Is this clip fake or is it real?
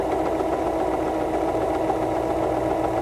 real